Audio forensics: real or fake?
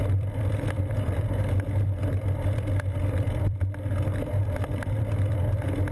fake